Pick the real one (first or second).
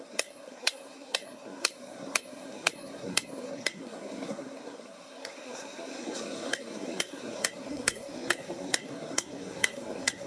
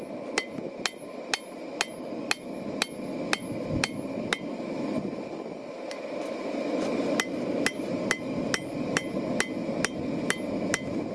second